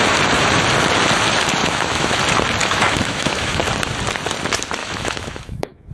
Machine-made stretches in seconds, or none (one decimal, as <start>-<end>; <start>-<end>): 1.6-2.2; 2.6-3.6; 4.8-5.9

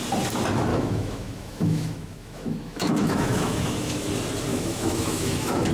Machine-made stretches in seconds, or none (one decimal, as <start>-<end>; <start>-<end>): 0.7-4.1; 4.5-5.7

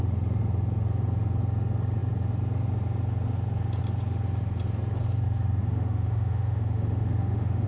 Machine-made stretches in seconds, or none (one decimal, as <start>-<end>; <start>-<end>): 5.6-7.7

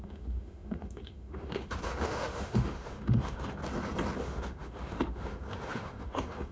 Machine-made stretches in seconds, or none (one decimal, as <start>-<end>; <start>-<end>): 0.0-3.6; 4.2-6.5

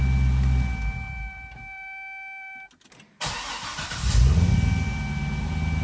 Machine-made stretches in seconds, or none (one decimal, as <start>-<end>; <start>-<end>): none

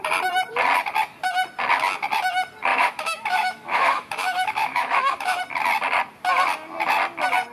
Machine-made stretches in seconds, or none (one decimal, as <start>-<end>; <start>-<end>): 2.7-5.4

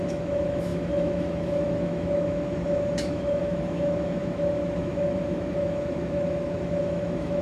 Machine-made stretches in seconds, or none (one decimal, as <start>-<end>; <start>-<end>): 0.0-7.4

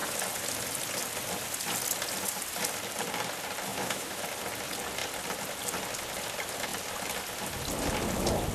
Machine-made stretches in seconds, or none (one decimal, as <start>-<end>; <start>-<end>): 3.7-4.2